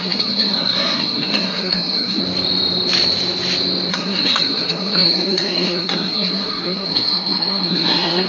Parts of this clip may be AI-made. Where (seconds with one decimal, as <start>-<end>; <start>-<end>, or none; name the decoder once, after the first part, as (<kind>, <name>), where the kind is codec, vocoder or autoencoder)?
0.0-2.2 (codec, SNAC); 3.9-8.3